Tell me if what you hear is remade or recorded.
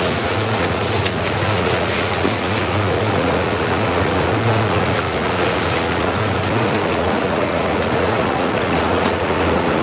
remade